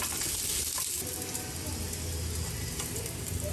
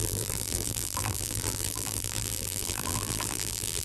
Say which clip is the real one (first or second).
first